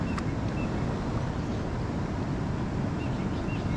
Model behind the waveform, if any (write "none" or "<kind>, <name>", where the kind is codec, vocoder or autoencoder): none